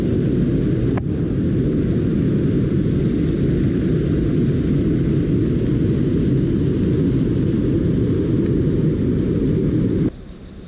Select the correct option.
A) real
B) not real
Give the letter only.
A